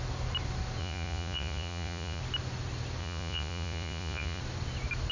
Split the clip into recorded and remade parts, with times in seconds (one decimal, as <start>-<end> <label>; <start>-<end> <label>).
0.0-0.8 recorded; 0.8-2.2 remade; 2.2-3.0 recorded; 3.0-4.4 remade; 4.4-5.1 recorded

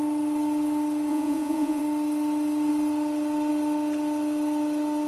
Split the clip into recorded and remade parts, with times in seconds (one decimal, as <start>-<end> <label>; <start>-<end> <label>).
0.0-1.1 recorded; 1.1-1.8 remade; 1.8-5.1 recorded

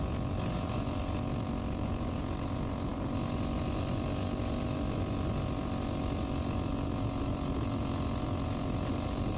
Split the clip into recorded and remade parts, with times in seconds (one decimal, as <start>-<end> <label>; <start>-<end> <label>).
0.0-9.4 recorded

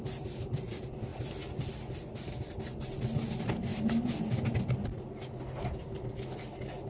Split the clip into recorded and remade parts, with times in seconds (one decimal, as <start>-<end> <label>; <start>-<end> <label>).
0.0-6.9 recorded

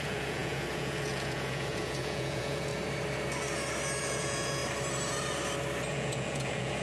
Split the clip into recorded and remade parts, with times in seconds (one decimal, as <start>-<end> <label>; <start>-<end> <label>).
0.0-2.7 remade; 2.7-4.0 recorded; 4.0-4.6 remade; 4.6-5.9 recorded; 5.9-6.8 remade

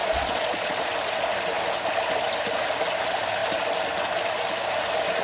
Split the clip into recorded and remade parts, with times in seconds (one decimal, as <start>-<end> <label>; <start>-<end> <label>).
0.0-0.9 remade; 0.9-5.2 recorded

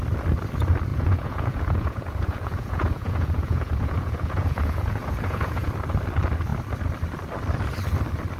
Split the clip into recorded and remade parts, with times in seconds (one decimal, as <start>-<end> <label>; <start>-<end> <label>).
0.0-0.9 recorded; 0.9-5.7 remade; 5.7-8.4 recorded